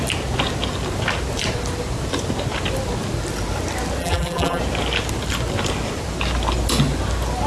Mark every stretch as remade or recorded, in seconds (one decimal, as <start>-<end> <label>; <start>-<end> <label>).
0.0-4.0 recorded; 4.0-4.6 remade; 4.6-7.5 recorded